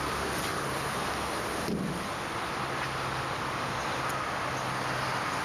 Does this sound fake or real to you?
real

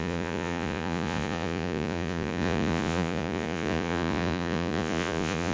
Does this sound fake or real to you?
fake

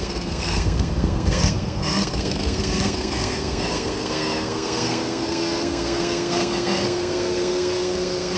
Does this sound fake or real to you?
fake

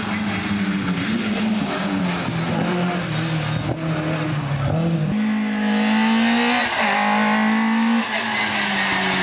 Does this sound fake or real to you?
real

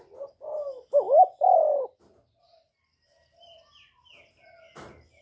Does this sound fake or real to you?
real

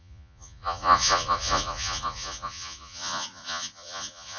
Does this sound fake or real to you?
fake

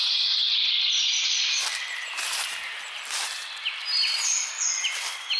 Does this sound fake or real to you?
real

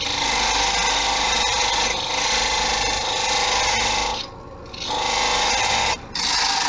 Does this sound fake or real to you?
real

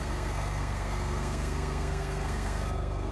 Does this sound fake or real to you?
fake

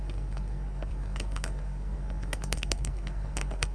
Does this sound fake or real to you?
fake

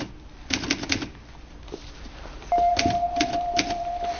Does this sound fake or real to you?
real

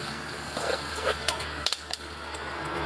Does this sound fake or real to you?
fake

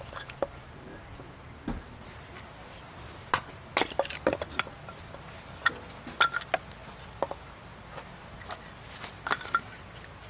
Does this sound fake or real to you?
real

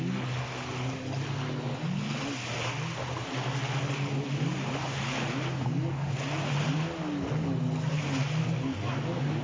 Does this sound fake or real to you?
real